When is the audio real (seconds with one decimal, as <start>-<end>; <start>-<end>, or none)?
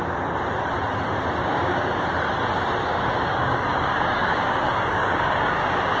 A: 0.0-1.4; 2.0-2.8